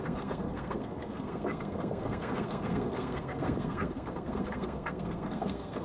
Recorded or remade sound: remade